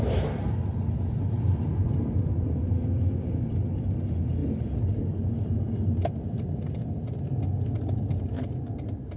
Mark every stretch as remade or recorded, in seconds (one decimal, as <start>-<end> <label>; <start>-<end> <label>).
0.0-9.2 recorded

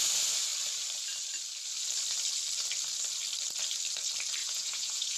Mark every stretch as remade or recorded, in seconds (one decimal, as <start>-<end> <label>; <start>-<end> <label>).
0.0-4.4 recorded; 4.4-5.2 remade

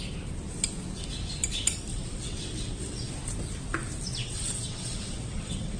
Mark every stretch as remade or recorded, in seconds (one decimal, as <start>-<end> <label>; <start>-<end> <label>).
0.0-1.9 recorded; 1.9-3.1 remade; 3.1-4.2 recorded; 4.2-5.8 remade

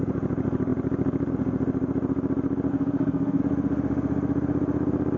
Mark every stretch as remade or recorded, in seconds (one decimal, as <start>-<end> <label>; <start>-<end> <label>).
0.0-2.7 recorded; 2.7-3.4 remade; 3.4-5.2 recorded